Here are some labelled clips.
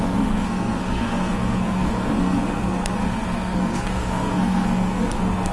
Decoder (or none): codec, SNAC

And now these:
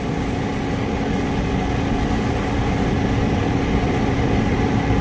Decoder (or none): none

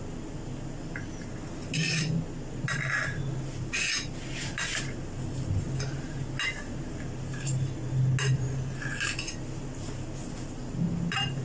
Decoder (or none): none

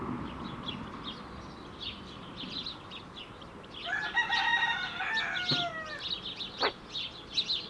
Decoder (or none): none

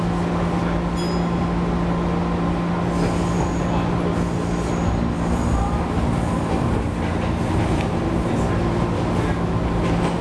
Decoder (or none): none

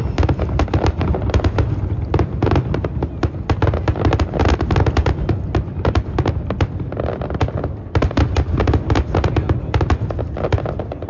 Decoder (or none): none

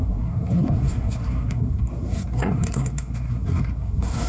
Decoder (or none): codec, SNAC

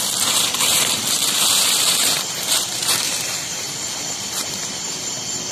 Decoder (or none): vocoder, BigVGAN v2